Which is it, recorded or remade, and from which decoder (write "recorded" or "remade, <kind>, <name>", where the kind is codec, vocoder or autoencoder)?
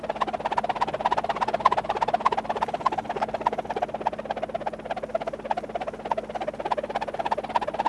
recorded